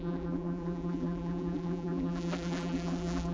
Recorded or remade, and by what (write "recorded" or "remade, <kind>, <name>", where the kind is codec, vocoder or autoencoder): remade, vocoder, BigVGAN v2